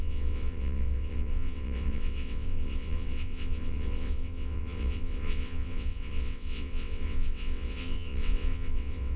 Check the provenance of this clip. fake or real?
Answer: fake